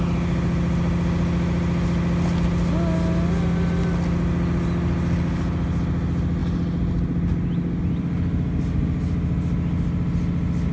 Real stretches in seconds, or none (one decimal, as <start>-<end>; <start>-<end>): 0.0-10.7